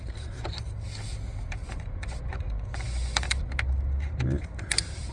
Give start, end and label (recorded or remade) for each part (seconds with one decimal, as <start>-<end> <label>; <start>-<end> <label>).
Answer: 0.0-1.6 recorded; 1.6-3.5 remade; 3.5-5.1 recorded